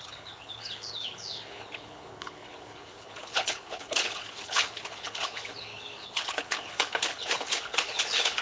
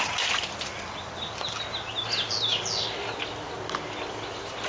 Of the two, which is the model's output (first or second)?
first